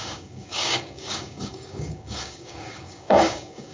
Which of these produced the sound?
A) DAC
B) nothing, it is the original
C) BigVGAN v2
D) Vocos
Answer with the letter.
A